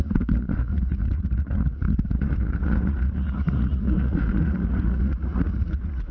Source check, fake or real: fake